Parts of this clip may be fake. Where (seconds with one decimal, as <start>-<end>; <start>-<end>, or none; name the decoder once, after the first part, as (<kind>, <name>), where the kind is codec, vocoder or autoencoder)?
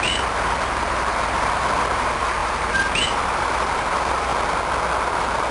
0.0-4.3 (vocoder, BigVGAN v2); 5.1-5.5